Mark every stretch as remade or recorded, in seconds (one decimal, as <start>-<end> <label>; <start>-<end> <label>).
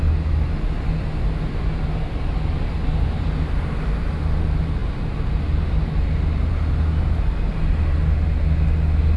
0.0-9.2 recorded